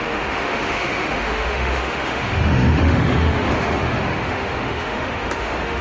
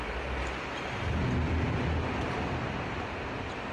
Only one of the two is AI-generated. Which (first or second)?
first